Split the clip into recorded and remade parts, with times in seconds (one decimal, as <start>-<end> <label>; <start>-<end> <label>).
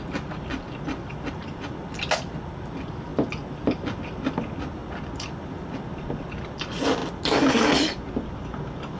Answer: 0.0-9.0 recorded